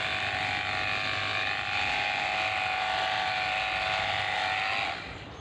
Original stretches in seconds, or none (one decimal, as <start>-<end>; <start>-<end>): 0.0-5.4